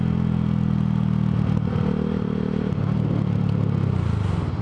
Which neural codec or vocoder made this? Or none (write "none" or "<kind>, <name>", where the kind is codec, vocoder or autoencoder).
none